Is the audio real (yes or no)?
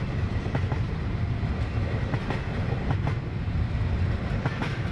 yes